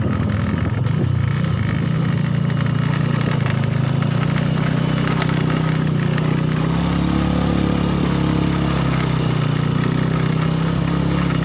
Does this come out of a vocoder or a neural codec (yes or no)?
no